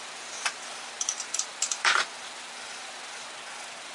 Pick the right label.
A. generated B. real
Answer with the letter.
B